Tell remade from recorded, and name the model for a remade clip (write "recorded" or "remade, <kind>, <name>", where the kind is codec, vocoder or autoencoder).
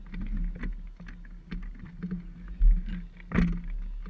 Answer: recorded